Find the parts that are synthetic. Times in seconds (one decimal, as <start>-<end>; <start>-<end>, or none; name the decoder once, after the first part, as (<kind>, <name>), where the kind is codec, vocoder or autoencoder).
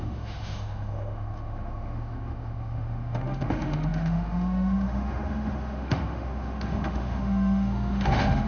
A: 0.0-8.5 (autoencoder, DAC-VAE)